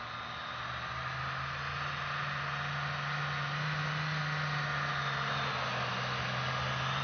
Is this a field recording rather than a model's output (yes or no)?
yes